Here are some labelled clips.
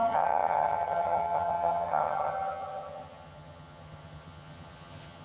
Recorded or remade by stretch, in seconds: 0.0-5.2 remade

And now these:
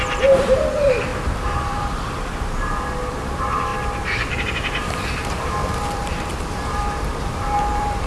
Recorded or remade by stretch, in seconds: 0.0-8.1 remade

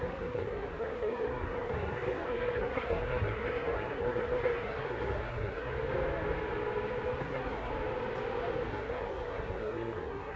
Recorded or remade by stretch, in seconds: 0.0-5.7 remade; 5.7-7.2 recorded; 7.2-7.7 remade; 7.7-8.7 recorded; 8.7-10.4 remade

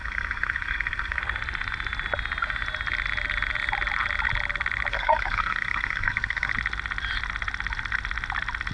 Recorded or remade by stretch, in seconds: 0.0-1.2 remade; 1.2-4.9 recorded; 4.9-6.5 remade; 6.5-8.7 recorded

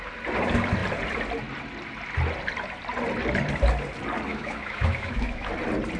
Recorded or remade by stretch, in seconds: 0.0-4.3 recorded; 4.3-5.5 remade; 5.5-6.0 recorded